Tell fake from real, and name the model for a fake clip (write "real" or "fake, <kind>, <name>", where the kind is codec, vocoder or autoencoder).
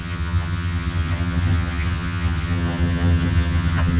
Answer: fake, vocoder, HiFi-GAN